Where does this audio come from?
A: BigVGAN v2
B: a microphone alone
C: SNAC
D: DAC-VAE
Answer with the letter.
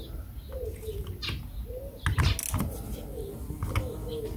B